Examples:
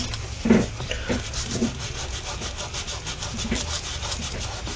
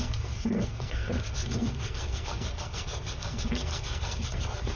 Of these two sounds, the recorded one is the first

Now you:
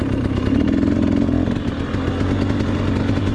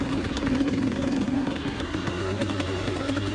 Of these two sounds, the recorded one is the first